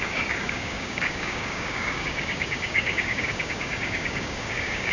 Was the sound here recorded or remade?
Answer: remade